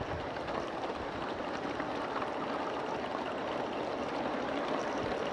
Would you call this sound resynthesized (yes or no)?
no